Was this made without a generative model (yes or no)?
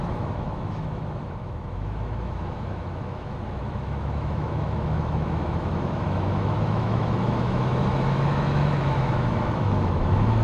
no